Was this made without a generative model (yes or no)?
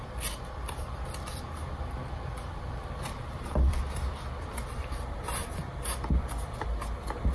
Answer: no